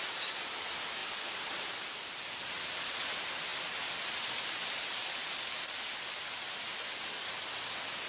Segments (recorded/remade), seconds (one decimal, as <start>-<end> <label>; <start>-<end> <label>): 0.0-8.1 recorded